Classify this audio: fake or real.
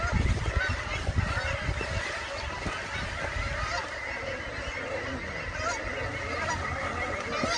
real